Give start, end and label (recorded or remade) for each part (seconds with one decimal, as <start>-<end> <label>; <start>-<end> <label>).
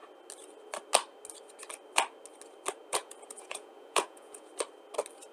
0.0-2.9 recorded; 2.9-4.5 remade; 4.5-5.3 recorded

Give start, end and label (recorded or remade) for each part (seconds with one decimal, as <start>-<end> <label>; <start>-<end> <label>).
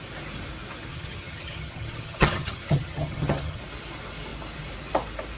0.0-0.9 recorded; 0.9-3.6 remade; 3.6-5.4 recorded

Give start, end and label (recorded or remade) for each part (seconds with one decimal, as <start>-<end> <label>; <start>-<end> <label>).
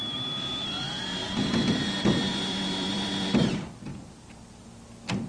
0.0-1.2 remade; 1.2-2.3 recorded; 2.3-3.9 remade; 3.9-5.3 recorded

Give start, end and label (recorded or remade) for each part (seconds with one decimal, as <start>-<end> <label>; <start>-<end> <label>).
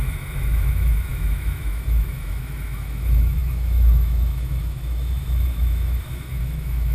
0.0-6.9 remade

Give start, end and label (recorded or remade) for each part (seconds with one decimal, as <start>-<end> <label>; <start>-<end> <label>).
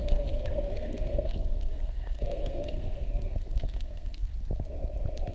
0.0-4.3 remade; 4.3-5.3 recorded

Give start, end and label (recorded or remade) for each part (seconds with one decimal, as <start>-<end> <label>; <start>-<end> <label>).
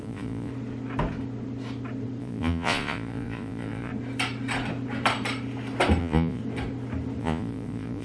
0.0-0.5 remade; 0.5-2.2 recorded; 2.2-3.9 remade; 3.9-6.0 recorded; 6.0-6.4 remade; 6.4-7.2 recorded; 7.2-8.0 remade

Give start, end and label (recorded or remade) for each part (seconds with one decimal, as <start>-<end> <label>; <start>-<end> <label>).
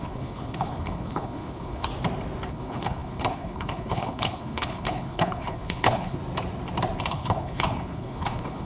0.0-1.9 remade; 1.9-2.5 recorded; 2.5-6.2 remade; 6.2-7.1 recorded; 7.1-8.6 remade